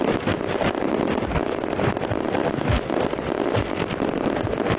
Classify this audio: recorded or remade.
recorded